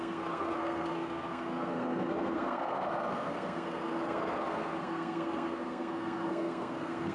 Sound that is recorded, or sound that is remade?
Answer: remade